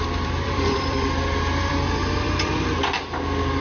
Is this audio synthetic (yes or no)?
yes